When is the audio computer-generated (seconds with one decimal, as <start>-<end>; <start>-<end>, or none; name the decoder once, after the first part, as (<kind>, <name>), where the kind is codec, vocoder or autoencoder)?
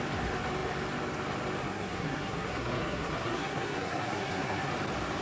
1.6-4.7 (codec, SNAC)